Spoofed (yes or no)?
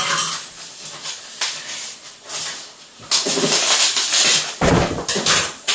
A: no